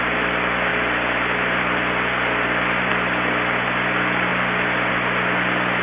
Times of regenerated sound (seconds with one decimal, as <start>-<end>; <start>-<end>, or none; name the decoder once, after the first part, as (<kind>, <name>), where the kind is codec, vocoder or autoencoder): none

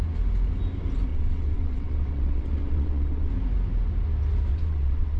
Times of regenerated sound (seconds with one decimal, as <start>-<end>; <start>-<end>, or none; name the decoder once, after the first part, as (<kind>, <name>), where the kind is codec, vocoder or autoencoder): 1.1-3.3 (vocoder, WaveNeXt); 4.5-5.2

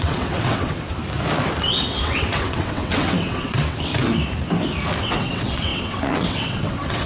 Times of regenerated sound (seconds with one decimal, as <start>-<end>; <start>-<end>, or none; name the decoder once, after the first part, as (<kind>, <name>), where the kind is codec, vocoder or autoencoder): 0.0-1.0 (vocoder, WaveNeXt); 1.6-3.9; 5.0-7.1

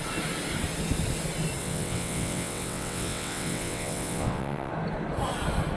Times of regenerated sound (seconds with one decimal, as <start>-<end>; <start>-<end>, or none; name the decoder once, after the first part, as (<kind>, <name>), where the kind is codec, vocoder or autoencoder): 1.6-4.7 (vocoder, WaveNeXt)

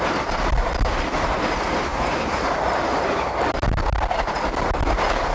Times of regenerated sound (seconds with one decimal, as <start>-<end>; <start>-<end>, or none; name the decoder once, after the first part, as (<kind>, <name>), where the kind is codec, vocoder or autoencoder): none

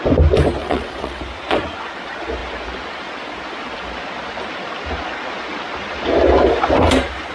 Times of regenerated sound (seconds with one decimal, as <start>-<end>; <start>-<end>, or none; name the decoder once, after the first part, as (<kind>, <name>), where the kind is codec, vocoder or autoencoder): 0.6-1.2 (vocoder, WaveNeXt)